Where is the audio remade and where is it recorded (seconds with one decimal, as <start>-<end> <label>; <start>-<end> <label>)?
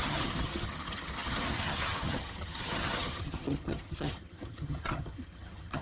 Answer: 0.0-5.8 remade